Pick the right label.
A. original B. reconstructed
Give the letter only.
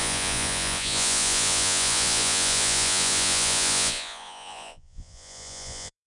B